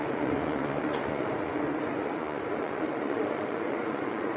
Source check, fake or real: fake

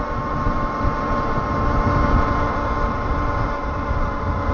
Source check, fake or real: real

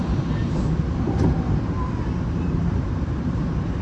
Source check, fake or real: fake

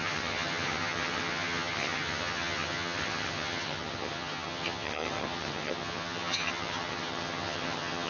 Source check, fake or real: fake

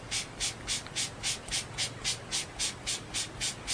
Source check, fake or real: real